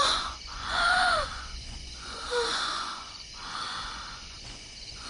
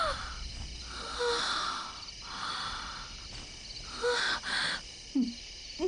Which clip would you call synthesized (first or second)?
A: first